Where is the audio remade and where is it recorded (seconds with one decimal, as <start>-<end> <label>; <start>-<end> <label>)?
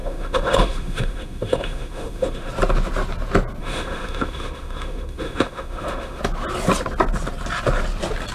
0.0-2.5 remade; 2.5-3.6 recorded; 3.6-6.2 remade; 6.2-8.3 recorded